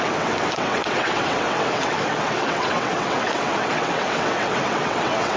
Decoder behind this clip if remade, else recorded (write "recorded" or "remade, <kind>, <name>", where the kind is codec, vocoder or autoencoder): remade, vocoder, WaveNeXt